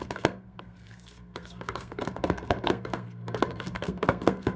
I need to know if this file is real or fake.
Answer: fake